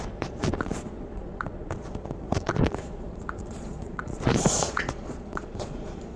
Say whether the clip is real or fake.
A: fake